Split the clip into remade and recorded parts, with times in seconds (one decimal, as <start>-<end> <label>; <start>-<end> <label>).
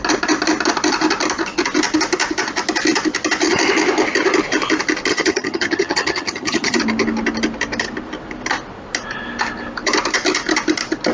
0.0-5.1 recorded; 5.1-6.8 remade; 6.8-11.1 recorded